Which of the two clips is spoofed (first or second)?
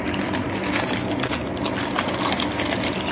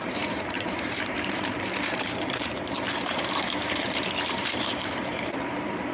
second